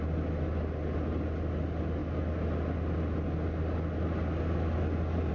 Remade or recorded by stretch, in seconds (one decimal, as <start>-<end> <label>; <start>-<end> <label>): 0.0-5.3 recorded